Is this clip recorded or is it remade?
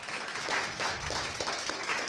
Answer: remade